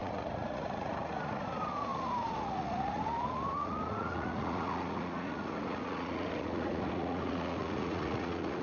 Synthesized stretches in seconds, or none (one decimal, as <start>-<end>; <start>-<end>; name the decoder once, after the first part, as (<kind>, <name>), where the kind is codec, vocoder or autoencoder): 0.0-8.6 (vocoder, Vocos)